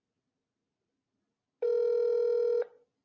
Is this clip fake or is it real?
real